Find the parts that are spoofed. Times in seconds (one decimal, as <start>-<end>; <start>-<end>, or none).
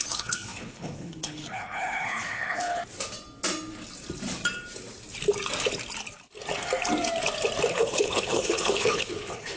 0.0-2.8; 7.7-9.6